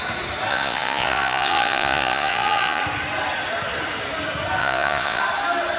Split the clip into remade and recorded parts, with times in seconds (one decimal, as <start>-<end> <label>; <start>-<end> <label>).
0.0-0.5 recorded; 0.5-2.8 remade; 2.8-4.6 recorded; 4.6-5.2 remade; 5.2-5.8 recorded